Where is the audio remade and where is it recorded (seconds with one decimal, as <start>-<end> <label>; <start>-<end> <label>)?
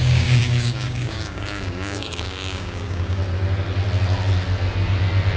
0.0-3.2 remade; 3.2-5.4 recorded